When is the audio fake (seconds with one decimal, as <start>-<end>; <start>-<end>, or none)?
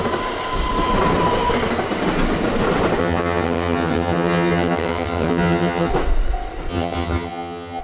3.0-5.9; 6.7-7.8